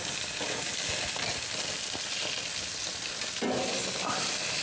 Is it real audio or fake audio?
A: real